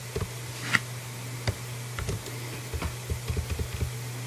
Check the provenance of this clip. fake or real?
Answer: real